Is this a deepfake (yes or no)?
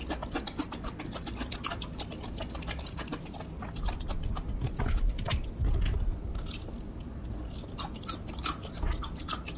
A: no